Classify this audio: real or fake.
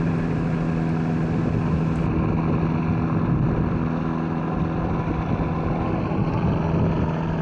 real